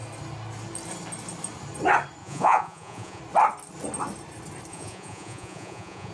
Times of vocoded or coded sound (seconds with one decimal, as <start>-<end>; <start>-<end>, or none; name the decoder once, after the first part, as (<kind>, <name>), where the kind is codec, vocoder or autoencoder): 2.2-3.2 (vocoder, Vocos); 4.7-6.1